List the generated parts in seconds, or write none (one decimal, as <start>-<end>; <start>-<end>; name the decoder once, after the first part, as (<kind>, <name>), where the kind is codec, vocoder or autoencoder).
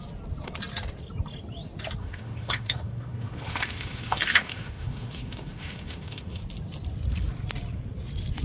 2.0-6.4 (autoencoder, DAC-VAE)